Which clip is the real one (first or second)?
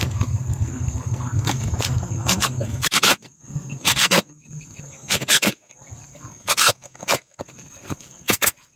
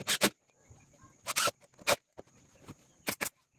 second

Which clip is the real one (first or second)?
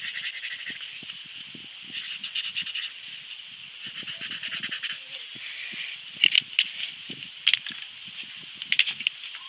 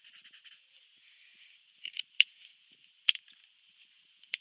first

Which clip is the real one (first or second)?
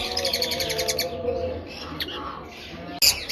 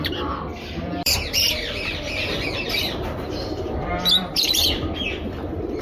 first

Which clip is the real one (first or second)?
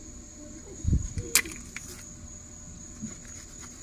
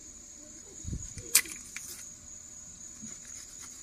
first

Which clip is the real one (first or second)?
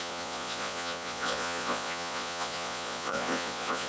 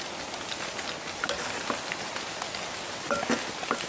second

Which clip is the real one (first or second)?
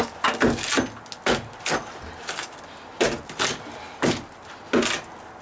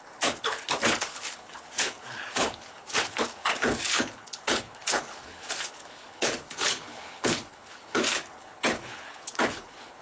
first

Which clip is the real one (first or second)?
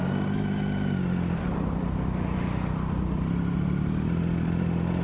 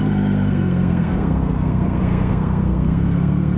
first